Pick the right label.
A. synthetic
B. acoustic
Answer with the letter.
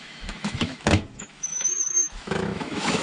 A